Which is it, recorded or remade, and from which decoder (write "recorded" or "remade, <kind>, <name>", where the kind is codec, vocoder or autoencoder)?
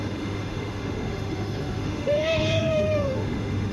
remade, autoencoder, DAC-VAE